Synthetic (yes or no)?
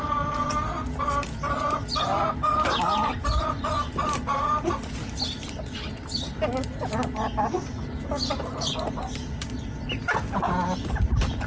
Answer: no